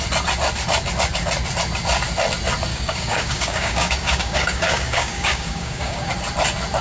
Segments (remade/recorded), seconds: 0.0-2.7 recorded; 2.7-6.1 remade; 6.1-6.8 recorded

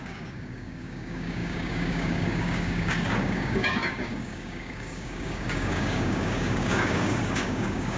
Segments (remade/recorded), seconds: 0.0-8.0 remade

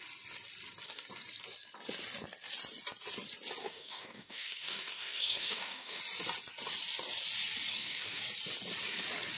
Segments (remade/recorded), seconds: 0.0-3.6 recorded; 3.6-6.0 remade; 6.0-7.7 recorded; 7.7-8.2 remade; 8.2-9.4 recorded

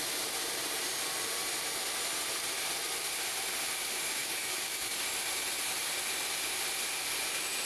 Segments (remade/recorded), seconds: 0.0-4.2 recorded; 4.2-4.9 remade; 4.9-7.7 recorded

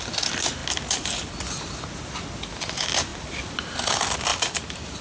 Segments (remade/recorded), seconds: 0.0-5.0 recorded

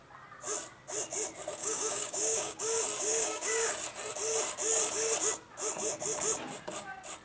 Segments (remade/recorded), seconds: 0.0-1.6 recorded; 1.6-2.6 remade; 2.6-3.1 recorded; 3.1-3.7 remade; 3.7-7.2 recorded

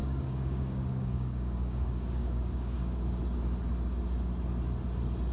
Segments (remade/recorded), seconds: 0.0-3.2 remade; 3.2-5.3 recorded